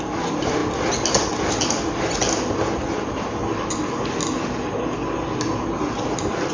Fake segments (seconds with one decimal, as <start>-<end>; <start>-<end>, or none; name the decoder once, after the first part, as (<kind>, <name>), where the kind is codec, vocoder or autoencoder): none

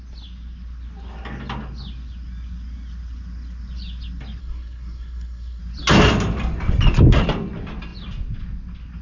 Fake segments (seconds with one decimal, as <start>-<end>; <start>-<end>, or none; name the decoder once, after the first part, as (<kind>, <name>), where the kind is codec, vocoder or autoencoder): 4.4-5.6 (codec, SNAC)

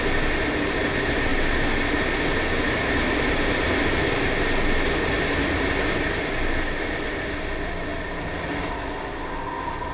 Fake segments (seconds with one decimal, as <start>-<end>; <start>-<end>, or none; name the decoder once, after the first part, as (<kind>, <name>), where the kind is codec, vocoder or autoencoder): none

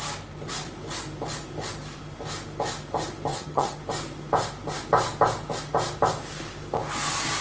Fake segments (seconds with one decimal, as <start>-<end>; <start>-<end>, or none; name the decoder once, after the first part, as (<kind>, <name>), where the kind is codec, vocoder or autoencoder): 3.3-3.8 (vocoder, HiFi-GAN)

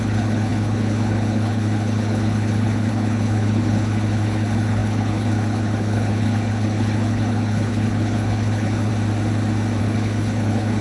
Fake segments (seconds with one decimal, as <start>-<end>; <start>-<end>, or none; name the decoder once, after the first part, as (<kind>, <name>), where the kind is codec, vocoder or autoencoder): 0.0-8.9 (codec, HILCodec); 9.8-10.8

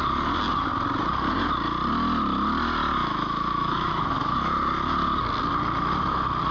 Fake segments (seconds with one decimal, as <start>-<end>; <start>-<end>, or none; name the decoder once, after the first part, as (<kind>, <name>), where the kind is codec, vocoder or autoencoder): 3.0-4.5 (autoencoder, DAC-VAE)

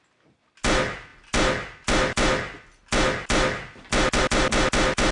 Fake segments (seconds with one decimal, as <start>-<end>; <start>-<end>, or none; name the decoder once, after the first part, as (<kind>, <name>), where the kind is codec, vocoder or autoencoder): none

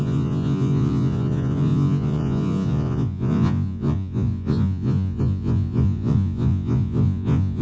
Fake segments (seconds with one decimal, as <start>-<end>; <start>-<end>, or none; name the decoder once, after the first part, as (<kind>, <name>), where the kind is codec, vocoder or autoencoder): 0.0-7.6 (vocoder, Vocos)